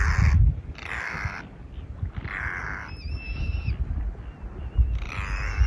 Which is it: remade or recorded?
recorded